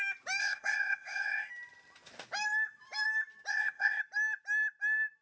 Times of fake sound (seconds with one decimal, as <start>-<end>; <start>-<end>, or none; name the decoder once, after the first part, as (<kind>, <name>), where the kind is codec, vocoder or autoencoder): 0.4-1.5 (codec, ZipCodec); 3.5-4.0